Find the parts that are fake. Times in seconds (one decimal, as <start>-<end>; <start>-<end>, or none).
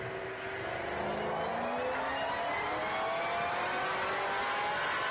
none